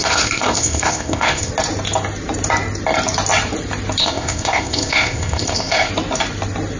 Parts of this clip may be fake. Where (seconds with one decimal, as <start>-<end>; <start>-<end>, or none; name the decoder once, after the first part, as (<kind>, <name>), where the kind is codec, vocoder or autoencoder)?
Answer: 0.0-1.5 (codec, ZipCodec); 4.0-5.9